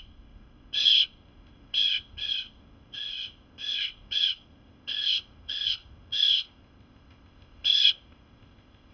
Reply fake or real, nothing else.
fake